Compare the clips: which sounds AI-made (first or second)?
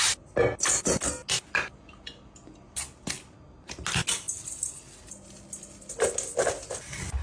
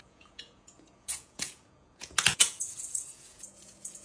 second